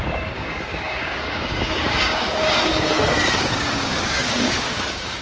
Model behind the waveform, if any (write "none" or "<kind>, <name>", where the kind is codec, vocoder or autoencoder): codec, DAC